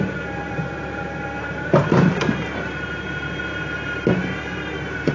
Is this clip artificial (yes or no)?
no